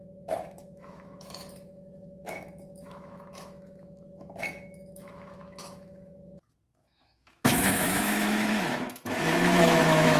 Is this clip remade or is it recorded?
remade